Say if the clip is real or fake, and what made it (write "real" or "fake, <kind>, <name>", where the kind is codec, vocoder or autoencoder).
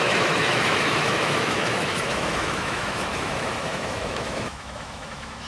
fake, autoencoder, DAC-VAE